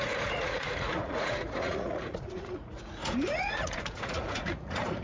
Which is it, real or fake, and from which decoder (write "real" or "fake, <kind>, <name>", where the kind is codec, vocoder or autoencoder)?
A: fake, vocoder, Vocos